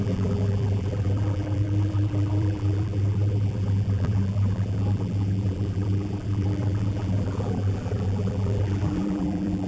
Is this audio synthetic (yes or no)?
yes